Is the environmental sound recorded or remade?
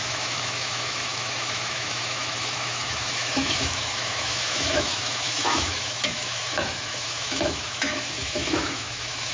remade